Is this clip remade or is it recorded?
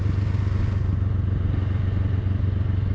recorded